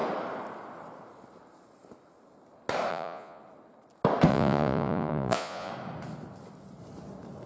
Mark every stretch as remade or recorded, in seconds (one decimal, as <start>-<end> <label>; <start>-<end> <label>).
0.0-2.9 recorded; 2.9-3.4 remade; 3.4-4.3 recorded; 4.3-5.7 remade; 5.7-7.5 recorded